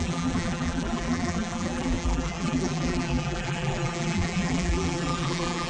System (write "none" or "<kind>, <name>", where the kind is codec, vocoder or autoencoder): vocoder, BigVGAN v2